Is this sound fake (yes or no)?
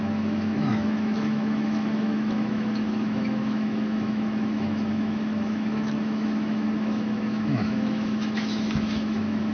yes